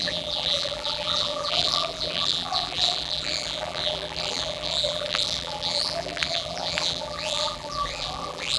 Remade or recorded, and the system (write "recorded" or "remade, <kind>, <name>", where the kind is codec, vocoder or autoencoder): remade, vocoder, BigVGAN v2